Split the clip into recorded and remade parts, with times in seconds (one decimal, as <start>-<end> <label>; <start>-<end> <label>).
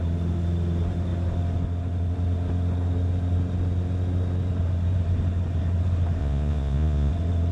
0.0-6.2 recorded; 6.2-7.1 remade; 7.1-7.5 recorded